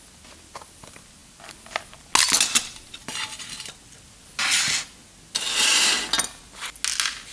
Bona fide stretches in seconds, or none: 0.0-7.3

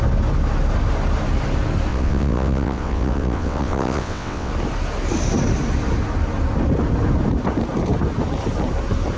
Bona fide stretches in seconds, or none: 0.0-1.9; 4.5-9.2

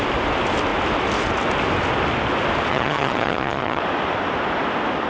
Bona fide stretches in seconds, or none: 0.0-2.7; 3.8-5.1

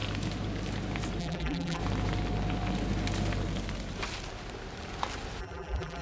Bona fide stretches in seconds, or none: 0.0-1.2; 1.8-5.4